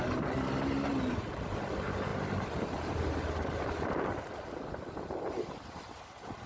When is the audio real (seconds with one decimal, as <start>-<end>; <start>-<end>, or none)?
0.0-6.5